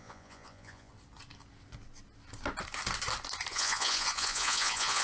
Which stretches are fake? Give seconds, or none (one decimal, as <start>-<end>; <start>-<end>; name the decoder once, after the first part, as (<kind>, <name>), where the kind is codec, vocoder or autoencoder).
0.0-0.9 (vocoder, Vocos); 3.5-5.0